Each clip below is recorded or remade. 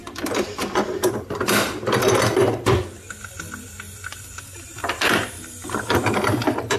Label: remade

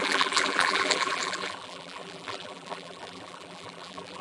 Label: remade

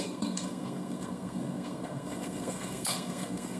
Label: remade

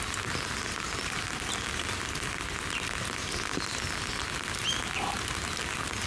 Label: recorded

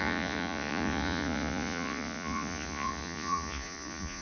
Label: remade